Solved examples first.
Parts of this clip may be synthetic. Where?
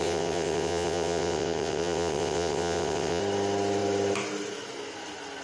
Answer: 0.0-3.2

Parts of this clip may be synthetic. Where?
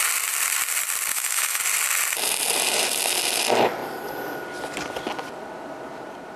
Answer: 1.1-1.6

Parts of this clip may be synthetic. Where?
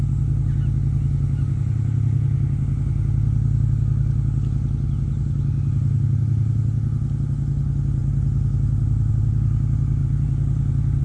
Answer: 10.0-11.0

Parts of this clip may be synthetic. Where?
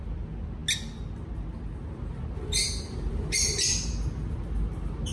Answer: none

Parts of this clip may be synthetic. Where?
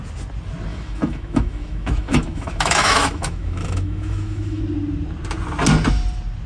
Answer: 0.7-4.6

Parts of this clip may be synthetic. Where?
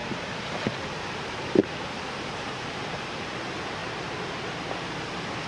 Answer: 0.0-3.3